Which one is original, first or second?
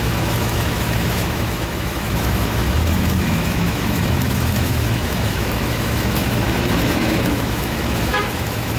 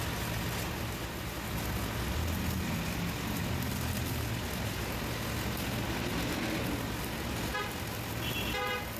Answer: second